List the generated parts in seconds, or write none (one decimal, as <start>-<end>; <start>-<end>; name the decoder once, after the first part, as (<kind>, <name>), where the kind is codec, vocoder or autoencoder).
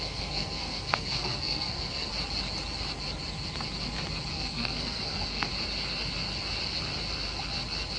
0.0-2.1 (codec, SNAC); 4.3-5.5